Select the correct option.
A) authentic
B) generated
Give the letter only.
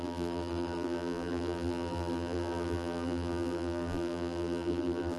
B